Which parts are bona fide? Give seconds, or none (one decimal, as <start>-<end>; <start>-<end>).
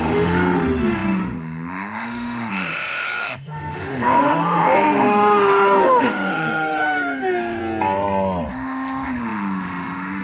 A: 7.6-8.5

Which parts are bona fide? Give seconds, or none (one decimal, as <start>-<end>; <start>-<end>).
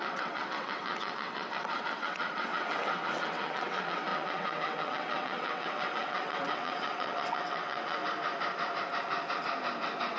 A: 8.0-10.2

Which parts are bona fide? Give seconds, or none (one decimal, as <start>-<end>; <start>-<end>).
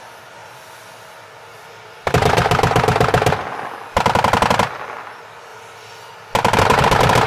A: 0.0-7.3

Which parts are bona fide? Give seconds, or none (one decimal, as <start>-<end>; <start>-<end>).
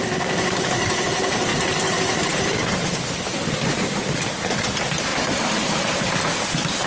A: 0.0-1.5; 2.9-3.3; 4.7-6.9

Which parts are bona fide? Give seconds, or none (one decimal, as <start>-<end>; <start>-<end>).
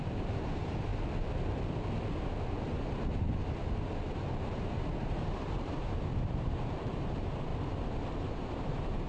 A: 0.9-4.4; 7.5-8.4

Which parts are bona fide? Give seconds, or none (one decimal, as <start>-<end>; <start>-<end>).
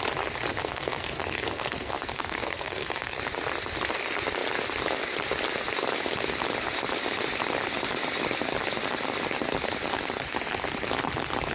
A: 0.0-0.6; 3.2-11.5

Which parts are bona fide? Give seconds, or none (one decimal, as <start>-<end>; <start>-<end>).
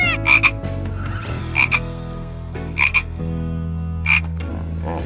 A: 0.0-1.4; 4.5-5.1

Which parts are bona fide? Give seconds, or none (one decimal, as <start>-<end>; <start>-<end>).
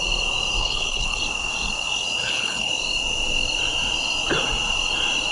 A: 0.0-0.6; 1.2-2.2; 2.7-5.3